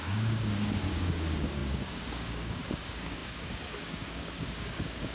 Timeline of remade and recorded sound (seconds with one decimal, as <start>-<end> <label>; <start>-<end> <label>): 0.0-5.1 remade